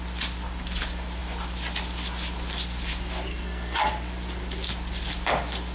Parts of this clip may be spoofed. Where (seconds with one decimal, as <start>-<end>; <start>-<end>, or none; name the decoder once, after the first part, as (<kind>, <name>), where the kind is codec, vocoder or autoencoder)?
3.3-3.9 (codec, SNAC)